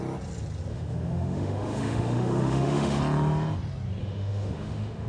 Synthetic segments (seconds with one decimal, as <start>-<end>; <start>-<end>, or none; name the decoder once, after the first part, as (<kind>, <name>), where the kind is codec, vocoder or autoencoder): 0.7-3.0 (autoencoder, DAC-VAE); 4.0-5.1